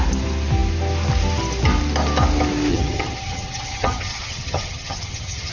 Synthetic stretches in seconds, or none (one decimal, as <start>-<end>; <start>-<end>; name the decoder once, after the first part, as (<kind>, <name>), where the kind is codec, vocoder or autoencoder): 2.7-5.5 (vocoder, HiFi-GAN)